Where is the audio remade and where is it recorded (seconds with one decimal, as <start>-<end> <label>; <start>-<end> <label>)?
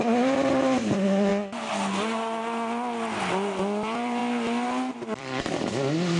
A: 0.0-1.3 remade; 1.3-3.3 recorded; 3.3-4.2 remade; 4.2-4.9 recorded; 4.9-6.2 remade